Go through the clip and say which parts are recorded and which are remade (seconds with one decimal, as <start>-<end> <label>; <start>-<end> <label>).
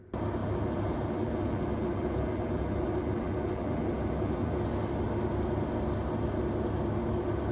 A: 0.0-0.4 recorded; 0.4-4.6 remade; 4.6-7.5 recorded